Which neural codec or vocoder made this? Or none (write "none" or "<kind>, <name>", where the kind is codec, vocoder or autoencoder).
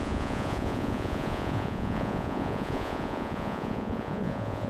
vocoder, Vocos